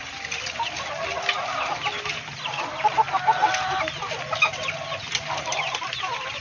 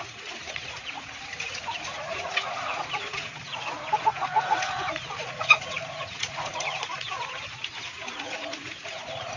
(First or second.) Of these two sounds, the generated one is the second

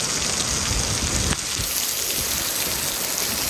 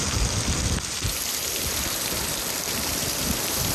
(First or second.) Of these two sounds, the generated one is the second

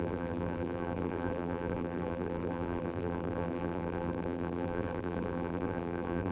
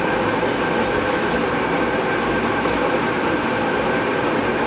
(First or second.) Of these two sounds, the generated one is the first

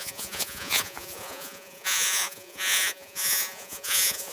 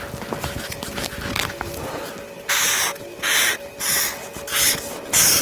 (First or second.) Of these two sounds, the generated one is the first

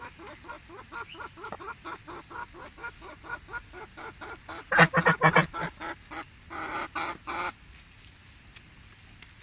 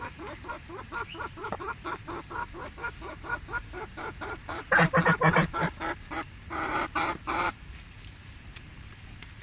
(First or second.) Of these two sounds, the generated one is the second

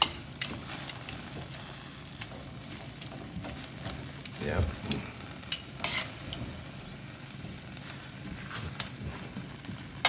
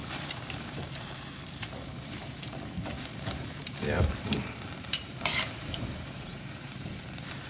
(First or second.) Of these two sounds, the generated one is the second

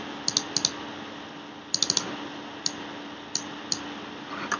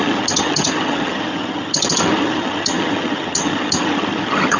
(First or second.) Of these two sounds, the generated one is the second